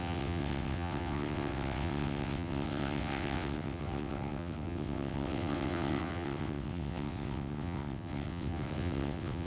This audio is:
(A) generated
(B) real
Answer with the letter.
A